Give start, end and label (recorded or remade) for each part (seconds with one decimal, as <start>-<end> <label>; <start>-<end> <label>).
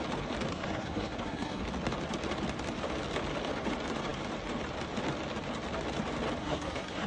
0.0-0.5 recorded; 0.5-1.6 remade; 1.6-6.4 recorded; 6.4-7.1 remade